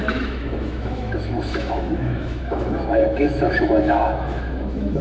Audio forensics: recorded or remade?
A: remade